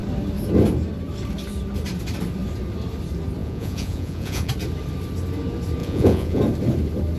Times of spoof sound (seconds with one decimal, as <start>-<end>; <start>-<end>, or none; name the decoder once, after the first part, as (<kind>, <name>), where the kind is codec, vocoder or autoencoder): 3.4-4.5 (vocoder, Vocos); 5.8-6.4